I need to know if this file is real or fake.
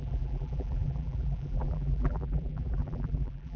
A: fake